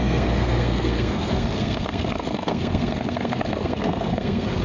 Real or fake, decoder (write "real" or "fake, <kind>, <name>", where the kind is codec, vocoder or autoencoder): fake, codec, SNAC